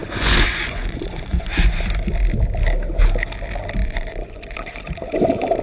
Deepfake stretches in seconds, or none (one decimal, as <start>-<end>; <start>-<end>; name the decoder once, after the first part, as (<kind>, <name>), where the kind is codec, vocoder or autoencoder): 0.0-1.8 (vocoder, Vocos); 3.8-4.8